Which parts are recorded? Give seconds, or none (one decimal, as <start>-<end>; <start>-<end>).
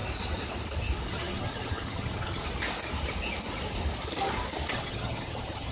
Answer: 0.0-1.1; 2.4-4.7